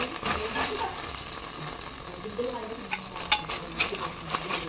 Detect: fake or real real